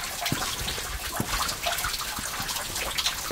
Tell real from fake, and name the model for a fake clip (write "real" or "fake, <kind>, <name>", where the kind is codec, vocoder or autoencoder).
real